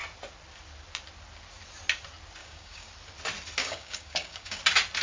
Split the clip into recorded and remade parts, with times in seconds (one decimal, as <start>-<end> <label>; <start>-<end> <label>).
0.0-2.4 recorded; 2.4-2.9 remade; 2.9-3.6 recorded; 3.6-4.6 remade; 4.6-5.0 recorded